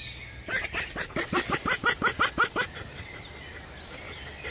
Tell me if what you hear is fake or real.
real